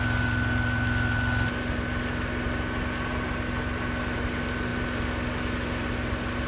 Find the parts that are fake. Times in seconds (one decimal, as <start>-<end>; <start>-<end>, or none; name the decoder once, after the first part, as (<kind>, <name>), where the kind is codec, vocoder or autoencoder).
none